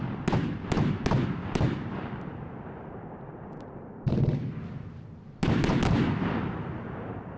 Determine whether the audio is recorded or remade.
recorded